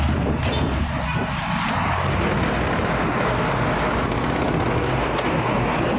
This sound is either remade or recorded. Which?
recorded